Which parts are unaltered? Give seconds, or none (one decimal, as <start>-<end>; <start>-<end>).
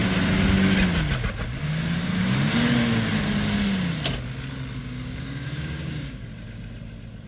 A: 0.0-4.8; 6.2-7.3